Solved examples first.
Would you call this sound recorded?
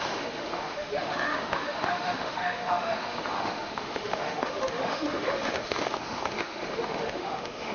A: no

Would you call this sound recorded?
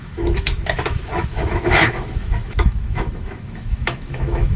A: no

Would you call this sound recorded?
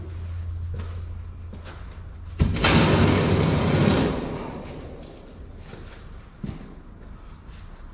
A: yes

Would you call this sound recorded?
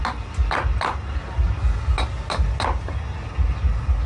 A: yes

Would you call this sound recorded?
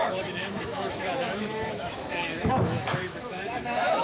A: no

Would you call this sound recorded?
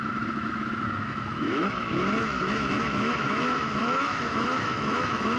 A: no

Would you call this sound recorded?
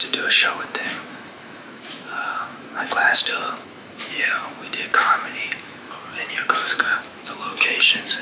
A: no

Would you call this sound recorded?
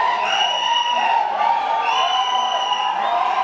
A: yes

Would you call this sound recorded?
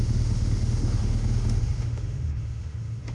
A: no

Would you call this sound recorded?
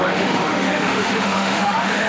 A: no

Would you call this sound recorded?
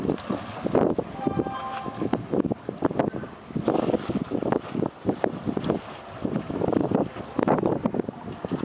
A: yes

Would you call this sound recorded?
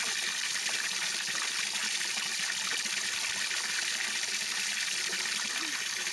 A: yes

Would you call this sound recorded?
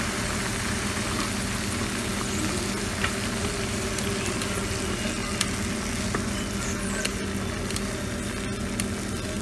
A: yes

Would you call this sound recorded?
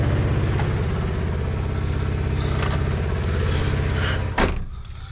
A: yes